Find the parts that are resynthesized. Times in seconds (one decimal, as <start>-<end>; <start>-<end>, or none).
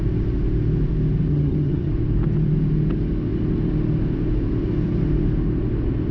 1.3-1.9